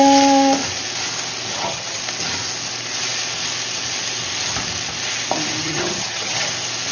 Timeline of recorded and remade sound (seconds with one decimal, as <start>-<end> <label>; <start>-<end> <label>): 0.0-1.5 recorded; 1.5-2.0 remade; 2.0-5.6 recorded; 5.6-6.5 remade; 6.5-6.9 recorded

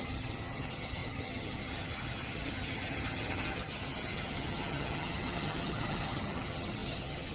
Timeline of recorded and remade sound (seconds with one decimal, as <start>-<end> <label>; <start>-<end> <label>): 0.0-7.3 remade

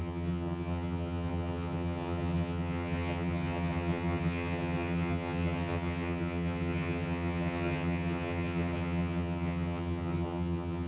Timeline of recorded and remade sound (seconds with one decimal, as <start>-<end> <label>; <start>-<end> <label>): 0.0-10.9 remade

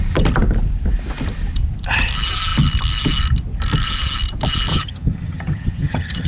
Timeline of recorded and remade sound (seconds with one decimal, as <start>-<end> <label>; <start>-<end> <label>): 0.0-4.7 recorded; 4.7-6.3 remade

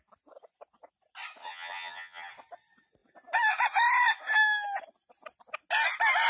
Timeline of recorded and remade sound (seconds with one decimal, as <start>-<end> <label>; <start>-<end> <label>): 0.0-1.4 recorded; 1.4-2.3 remade; 2.3-6.3 recorded

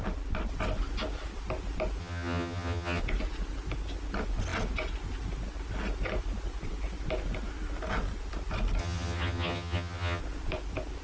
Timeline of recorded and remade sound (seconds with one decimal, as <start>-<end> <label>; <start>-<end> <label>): 0.0-2.0 recorded; 2.0-3.0 remade; 3.0-8.8 recorded; 8.8-10.2 remade; 10.2-11.0 recorded